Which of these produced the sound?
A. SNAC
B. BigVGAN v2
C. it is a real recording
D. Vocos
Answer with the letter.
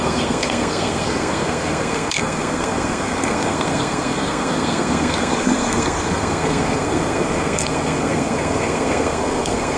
A